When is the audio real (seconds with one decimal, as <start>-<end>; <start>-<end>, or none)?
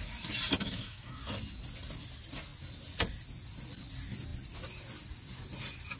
0.0-0.6; 1.2-6.0